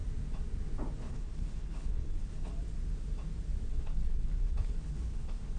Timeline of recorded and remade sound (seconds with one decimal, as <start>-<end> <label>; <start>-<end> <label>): 0.0-1.0 recorded; 1.0-2.5 remade; 2.5-3.7 recorded; 3.7-5.6 remade